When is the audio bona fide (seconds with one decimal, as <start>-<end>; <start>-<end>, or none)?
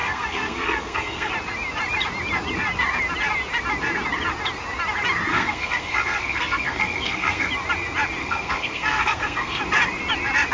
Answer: 1.3-5.3; 7.5-8.2; 9.6-10.5